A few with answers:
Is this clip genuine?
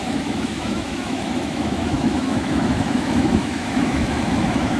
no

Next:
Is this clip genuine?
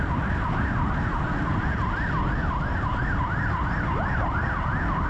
yes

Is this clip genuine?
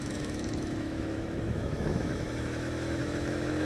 no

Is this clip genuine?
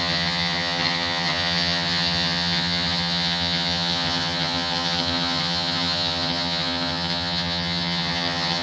no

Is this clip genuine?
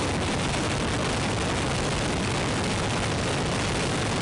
yes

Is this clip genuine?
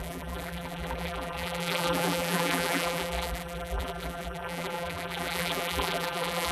no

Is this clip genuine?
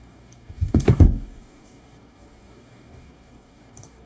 no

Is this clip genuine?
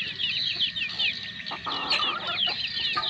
yes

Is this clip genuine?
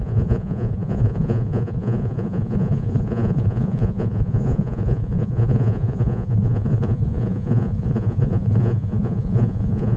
no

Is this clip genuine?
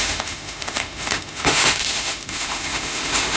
no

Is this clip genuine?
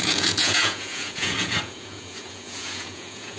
no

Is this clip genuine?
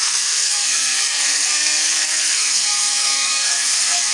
no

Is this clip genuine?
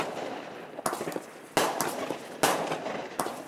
yes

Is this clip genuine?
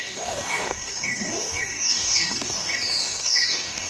no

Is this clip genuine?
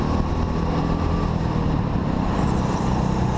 no